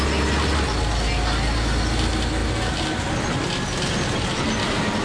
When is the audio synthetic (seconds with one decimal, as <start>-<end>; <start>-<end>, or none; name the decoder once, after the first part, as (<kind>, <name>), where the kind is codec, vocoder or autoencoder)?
none